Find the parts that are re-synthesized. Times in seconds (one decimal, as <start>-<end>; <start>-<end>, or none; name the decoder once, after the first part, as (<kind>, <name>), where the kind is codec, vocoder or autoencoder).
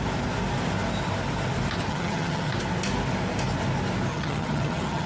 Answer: 1.9-2.5 (vocoder, HiFi-GAN); 4.1-5.1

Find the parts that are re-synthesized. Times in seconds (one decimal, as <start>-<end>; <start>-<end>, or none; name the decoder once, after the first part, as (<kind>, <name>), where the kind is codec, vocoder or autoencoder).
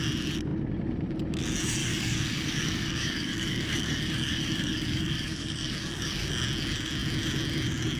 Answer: 1.8-6.3 (codec, DAC)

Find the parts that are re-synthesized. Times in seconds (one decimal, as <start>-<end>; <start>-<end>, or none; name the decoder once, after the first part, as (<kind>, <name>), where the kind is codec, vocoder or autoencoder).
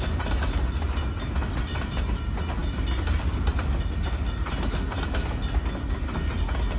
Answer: none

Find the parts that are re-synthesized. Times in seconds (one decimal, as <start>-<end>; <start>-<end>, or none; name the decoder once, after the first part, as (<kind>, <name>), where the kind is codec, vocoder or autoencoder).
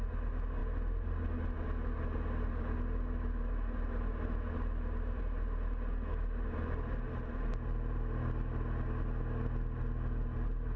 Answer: none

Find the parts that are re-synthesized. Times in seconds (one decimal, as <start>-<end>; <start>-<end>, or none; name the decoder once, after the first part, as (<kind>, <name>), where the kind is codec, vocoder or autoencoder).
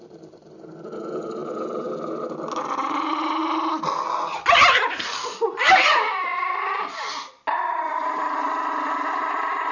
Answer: none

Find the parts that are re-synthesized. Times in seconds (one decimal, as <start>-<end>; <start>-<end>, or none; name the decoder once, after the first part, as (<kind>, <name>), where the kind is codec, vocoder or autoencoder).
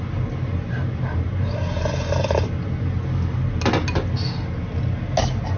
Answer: none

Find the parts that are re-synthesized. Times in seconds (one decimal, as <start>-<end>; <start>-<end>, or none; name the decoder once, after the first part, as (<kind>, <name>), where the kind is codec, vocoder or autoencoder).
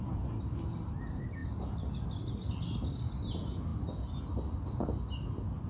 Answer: none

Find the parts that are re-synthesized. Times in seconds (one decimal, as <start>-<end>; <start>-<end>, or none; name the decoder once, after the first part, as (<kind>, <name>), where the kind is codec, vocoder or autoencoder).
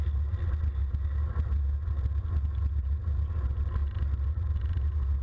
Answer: none